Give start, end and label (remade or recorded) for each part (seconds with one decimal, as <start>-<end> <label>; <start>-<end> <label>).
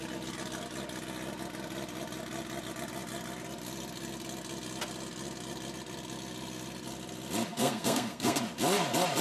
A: 0.0-7.5 recorded; 7.5-8.4 remade; 8.4-9.2 recorded